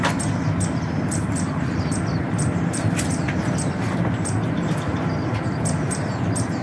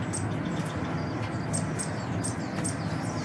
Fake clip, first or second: first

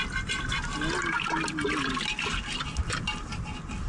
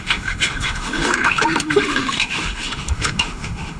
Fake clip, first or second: second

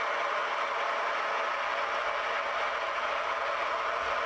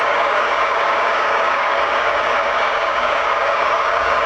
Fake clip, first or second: second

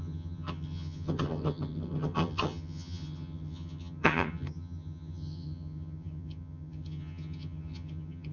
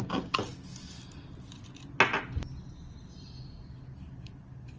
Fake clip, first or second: first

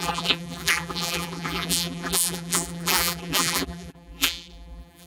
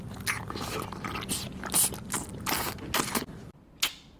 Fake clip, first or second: first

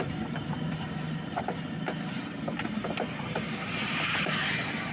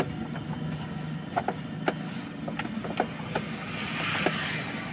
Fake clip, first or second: first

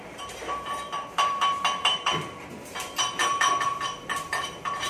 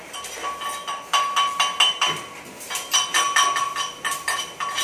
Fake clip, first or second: first